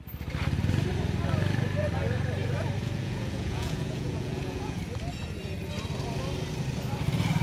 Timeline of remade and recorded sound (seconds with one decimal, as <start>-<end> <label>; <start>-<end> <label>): 0.0-2.8 recorded; 2.8-4.8 remade; 4.8-7.4 recorded